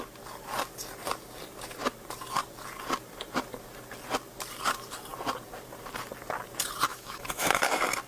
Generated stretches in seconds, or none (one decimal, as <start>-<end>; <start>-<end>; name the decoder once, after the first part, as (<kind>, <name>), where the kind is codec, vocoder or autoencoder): 6.9-7.6 (autoencoder, DAC-VAE)